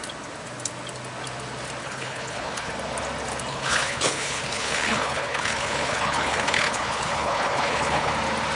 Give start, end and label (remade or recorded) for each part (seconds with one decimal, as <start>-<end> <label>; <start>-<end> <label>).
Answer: 0.0-1.8 recorded; 1.8-2.7 remade; 2.7-3.5 recorded; 3.5-8.1 remade; 8.1-8.6 recorded